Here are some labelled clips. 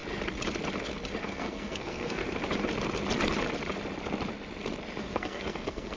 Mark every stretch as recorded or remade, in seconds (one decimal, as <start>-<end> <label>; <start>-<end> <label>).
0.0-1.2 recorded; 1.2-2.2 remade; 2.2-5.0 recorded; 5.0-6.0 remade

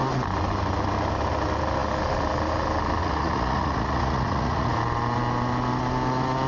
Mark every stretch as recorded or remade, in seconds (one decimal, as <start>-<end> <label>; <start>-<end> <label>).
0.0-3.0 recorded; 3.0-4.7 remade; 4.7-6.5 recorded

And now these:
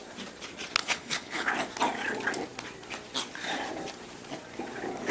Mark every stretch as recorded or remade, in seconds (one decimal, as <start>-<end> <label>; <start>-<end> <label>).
0.0-0.8 recorded; 0.8-1.5 remade; 1.5-5.1 recorded

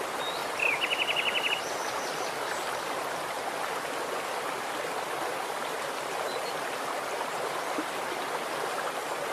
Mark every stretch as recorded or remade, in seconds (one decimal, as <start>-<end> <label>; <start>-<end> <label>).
0.0-9.3 recorded

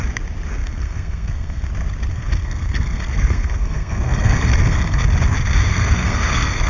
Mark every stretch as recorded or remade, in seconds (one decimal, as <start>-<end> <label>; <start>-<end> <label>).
0.0-0.6 recorded; 0.6-1.7 remade; 1.7-2.1 recorded; 2.1-5.0 remade; 5.0-5.7 recorded; 5.7-6.7 remade

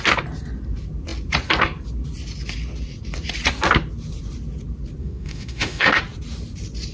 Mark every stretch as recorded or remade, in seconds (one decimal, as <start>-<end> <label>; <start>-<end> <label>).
0.0-5.0 recorded; 5.0-6.0 remade; 6.0-6.9 recorded

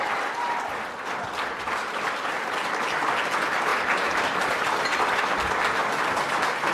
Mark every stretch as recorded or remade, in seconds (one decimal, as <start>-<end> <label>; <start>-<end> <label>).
0.0-1.8 recorded; 1.8-3.3 remade; 3.3-3.7 recorded; 3.7-5.2 remade; 5.2-5.8 recorded; 5.8-6.7 remade